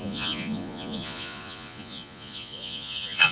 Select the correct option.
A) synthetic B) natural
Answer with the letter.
A